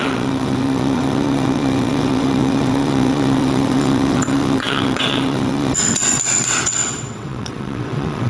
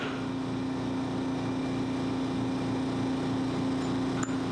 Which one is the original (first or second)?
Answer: second